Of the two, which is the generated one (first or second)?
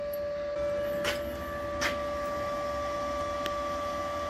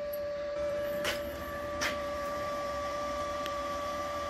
second